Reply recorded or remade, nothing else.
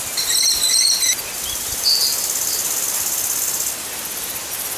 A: recorded